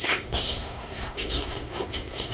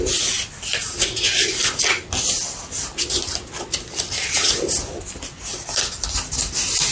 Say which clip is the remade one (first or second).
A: first